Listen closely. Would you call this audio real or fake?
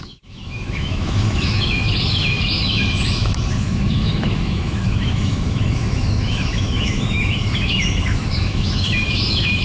fake